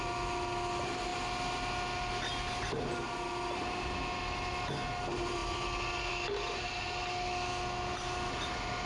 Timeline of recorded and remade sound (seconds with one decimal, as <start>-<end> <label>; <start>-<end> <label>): 0.0-8.9 recorded